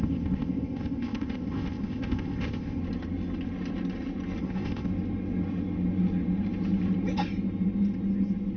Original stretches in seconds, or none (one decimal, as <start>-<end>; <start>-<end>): 2.8-4.4; 4.9-8.6